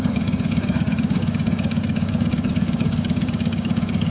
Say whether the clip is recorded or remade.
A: remade